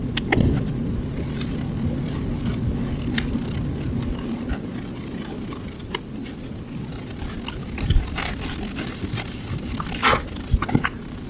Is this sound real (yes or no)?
yes